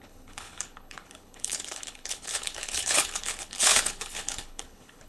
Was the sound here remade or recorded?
remade